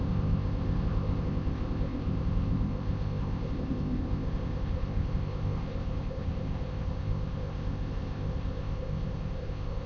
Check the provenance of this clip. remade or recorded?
remade